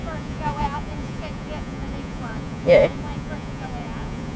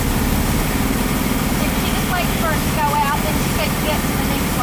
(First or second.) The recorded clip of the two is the second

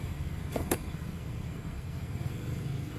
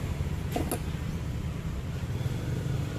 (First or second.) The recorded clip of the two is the second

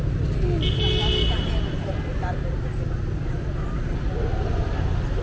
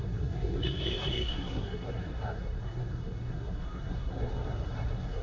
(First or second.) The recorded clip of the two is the first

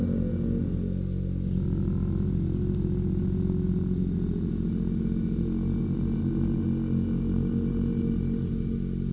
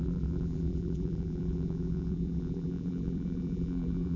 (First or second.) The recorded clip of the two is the first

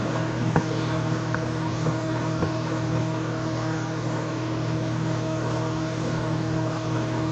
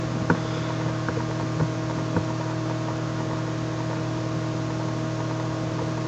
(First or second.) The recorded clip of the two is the second